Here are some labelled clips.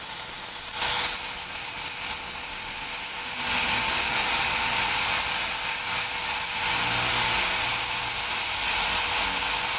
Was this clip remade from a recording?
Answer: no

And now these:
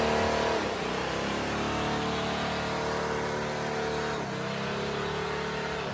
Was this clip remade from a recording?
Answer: no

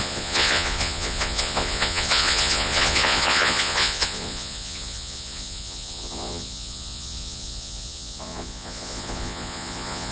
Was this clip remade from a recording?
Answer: yes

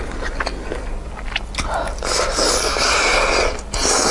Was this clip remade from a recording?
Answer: no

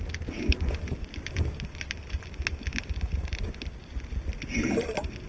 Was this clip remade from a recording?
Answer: no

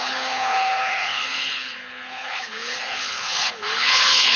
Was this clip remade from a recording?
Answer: yes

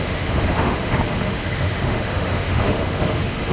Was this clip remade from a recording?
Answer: yes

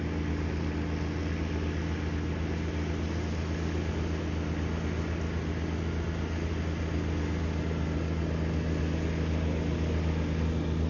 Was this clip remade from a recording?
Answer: no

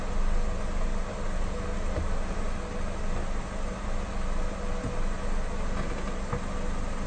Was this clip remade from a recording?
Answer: no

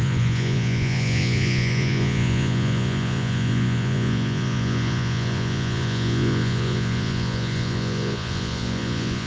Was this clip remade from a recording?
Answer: yes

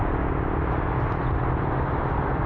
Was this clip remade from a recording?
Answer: no